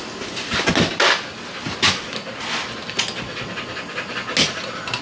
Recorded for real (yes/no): yes